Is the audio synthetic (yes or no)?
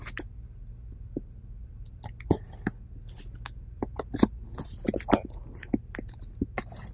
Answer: no